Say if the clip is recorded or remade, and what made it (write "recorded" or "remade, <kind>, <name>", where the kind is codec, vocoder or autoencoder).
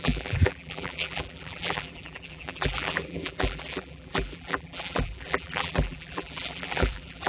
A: remade, vocoder, BigVGAN v2